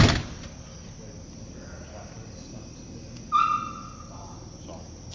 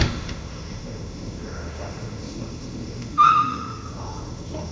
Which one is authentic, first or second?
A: first